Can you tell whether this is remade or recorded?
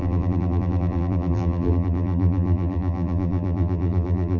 remade